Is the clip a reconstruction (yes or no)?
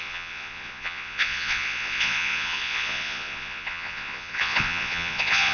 yes